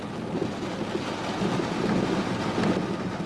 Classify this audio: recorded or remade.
recorded